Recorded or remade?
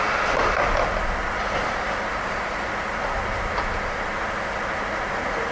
recorded